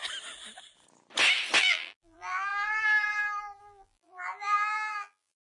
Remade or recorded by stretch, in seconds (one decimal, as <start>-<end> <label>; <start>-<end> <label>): 0.0-1.6 recorded; 1.6-2.5 remade; 2.5-3.6 recorded; 3.6-5.6 remade